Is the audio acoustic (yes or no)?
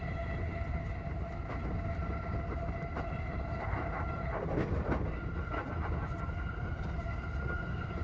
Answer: yes